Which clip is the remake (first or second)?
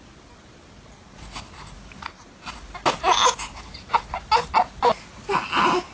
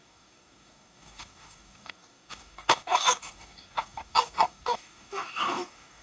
second